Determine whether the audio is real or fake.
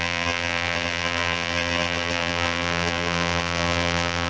fake